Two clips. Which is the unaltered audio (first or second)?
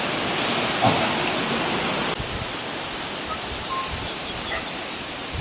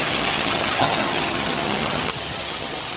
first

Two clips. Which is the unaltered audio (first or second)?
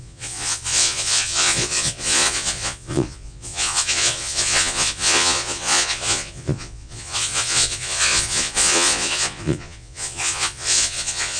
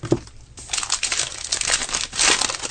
second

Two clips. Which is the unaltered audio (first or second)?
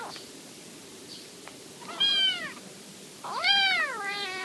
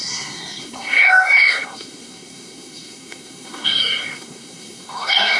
first